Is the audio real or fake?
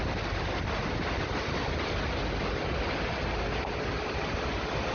real